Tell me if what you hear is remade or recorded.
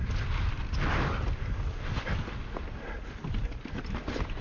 recorded